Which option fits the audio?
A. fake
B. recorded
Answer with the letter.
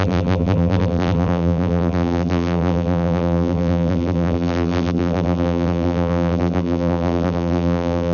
A